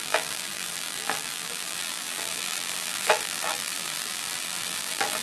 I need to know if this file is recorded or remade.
remade